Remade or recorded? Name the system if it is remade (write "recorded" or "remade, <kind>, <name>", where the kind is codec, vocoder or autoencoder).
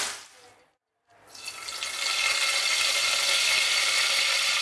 recorded